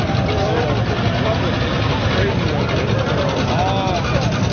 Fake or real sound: real